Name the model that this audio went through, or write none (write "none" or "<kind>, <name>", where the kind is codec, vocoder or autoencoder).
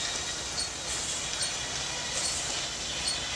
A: none